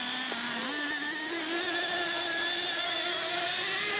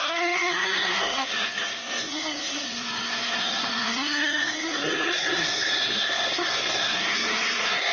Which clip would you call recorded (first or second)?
first